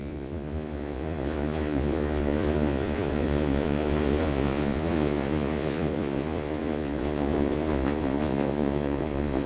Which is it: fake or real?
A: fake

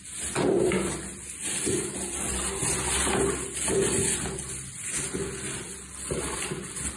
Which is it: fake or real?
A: real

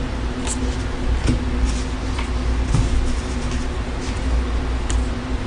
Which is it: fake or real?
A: real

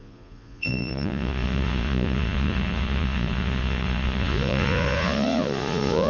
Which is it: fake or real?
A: fake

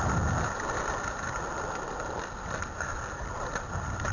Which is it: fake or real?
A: real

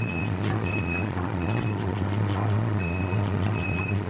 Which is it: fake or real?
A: fake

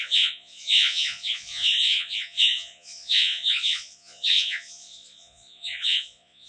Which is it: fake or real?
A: fake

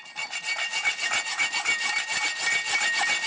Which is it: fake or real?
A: real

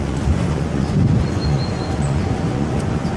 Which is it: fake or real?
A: fake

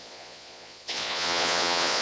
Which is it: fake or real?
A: fake